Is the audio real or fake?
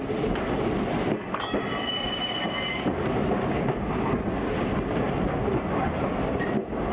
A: real